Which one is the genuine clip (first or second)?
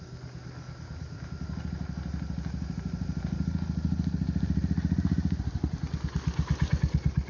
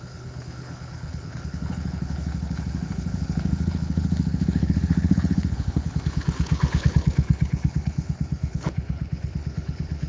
first